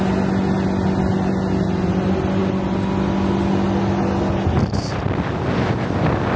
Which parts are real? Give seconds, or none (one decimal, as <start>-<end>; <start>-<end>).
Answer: 0.0-6.4